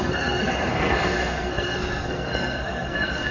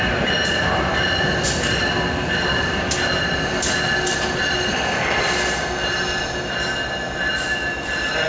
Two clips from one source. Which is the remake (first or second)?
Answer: first